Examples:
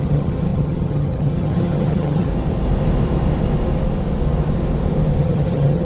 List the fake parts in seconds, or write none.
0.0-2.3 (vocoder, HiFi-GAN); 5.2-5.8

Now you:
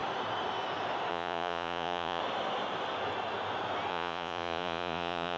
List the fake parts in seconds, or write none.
1.1-2.2 (vocoder, Vocos); 3.9-5.4

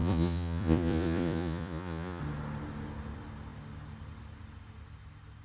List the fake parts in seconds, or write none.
0.0-2.2 (vocoder, Vocos)

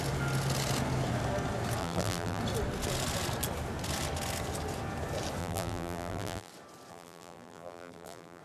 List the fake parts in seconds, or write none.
1.8-2.4 (vocoder, BigVGAN v2); 5.4-6.5; 6.9-8.4